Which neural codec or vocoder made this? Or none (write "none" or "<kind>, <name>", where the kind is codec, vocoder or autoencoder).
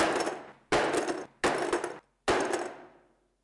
none